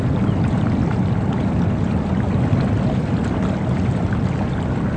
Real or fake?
real